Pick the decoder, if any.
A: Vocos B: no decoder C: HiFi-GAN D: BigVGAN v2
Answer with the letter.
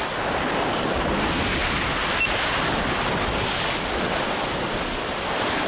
B